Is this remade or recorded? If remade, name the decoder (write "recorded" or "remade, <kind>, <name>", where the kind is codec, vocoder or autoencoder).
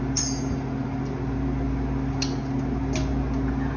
recorded